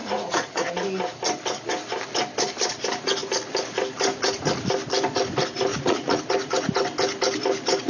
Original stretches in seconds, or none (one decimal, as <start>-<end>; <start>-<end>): 0.7-5.7; 6.2-7.9